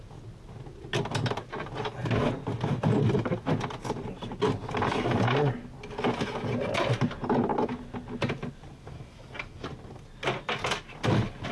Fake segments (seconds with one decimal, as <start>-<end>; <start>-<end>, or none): none